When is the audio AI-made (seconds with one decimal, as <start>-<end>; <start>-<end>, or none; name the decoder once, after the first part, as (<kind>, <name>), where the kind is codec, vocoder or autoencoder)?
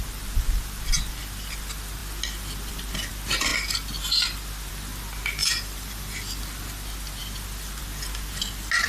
5.4-6.4 (vocoder, BigVGAN v2)